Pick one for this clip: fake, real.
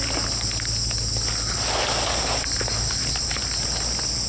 real